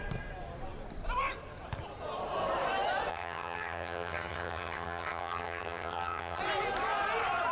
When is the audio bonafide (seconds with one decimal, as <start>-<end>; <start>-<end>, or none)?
0.0-3.1; 6.4-7.5